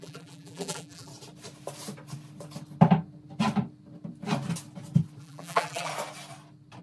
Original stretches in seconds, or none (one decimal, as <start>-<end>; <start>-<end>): 1.1-5.2; 5.9-6.8

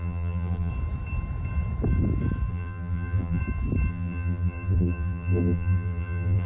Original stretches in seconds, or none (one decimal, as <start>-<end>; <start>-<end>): 0.7-2.5; 3.4-3.9

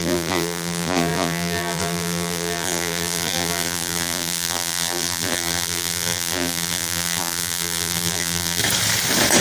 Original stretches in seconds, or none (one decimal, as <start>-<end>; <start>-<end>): 8.6-9.4